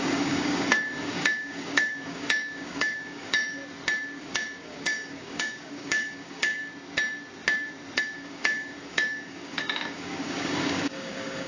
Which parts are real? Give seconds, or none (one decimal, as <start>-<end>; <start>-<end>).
3.6-4.2; 6.6-8.0